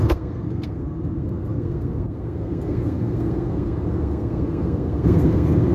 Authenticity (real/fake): fake